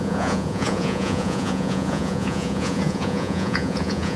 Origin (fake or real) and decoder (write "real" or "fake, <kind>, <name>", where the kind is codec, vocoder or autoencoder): fake, vocoder, Vocos